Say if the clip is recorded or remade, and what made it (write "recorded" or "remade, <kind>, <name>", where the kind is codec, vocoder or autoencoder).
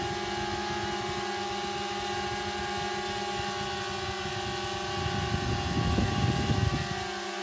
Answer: recorded